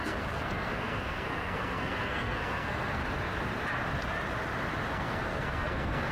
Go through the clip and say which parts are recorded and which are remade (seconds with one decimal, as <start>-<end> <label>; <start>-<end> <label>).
0.0-3.0 remade; 3.0-4.9 recorded; 4.9-6.1 remade